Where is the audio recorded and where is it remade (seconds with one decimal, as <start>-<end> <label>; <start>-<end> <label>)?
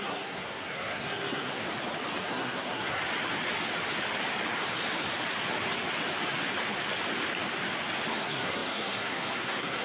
0.0-1.6 remade; 1.6-2.2 recorded; 2.2-3.0 remade; 3.0-8.1 recorded; 8.1-9.8 remade